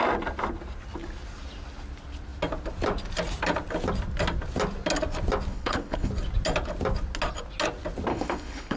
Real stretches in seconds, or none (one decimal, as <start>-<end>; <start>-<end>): 0.0-5.5; 6.1-8.1